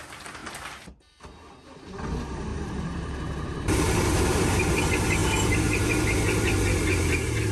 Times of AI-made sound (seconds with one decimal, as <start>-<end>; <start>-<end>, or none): 2.5-4.8; 5.2-5.9